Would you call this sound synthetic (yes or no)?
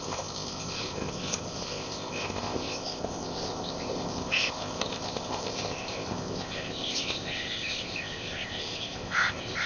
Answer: yes